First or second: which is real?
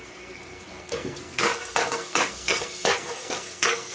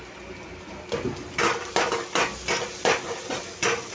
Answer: second